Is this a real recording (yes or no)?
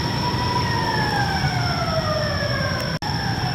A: yes